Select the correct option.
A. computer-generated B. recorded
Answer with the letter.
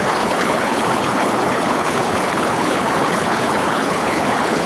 A